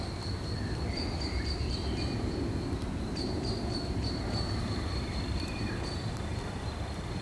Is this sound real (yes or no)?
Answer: no